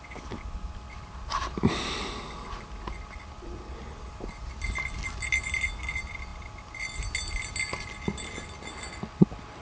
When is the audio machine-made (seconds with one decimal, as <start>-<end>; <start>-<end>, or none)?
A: none